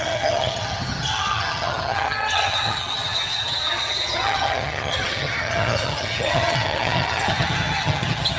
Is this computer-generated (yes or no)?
yes